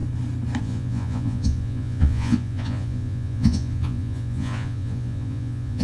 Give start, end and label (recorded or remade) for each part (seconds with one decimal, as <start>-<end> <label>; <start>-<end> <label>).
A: 0.0-0.6 recorded; 0.6-5.8 remade